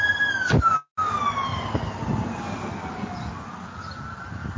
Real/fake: real